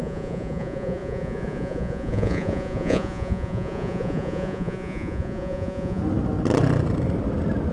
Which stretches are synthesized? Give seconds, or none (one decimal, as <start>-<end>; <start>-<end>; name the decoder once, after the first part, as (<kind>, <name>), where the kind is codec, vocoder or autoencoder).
0.0-6.0 (vocoder, Vocos)